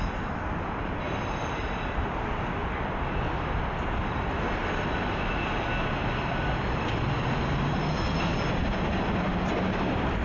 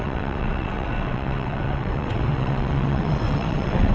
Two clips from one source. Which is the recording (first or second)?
first